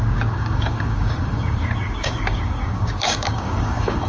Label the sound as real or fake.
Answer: fake